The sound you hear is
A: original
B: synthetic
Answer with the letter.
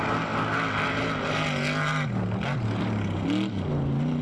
A